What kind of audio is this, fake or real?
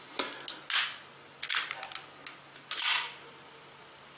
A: real